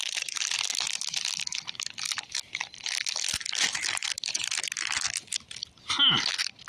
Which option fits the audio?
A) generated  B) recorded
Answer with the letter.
B